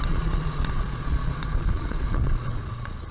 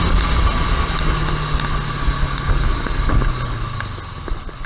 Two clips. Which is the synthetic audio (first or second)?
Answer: first